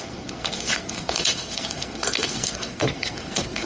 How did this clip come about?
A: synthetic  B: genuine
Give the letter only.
A